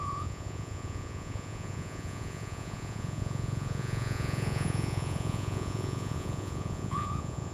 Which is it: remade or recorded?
remade